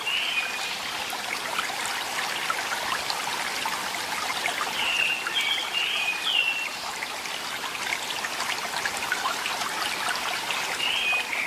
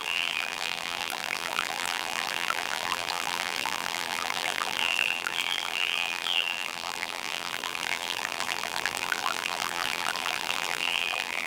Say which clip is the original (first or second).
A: first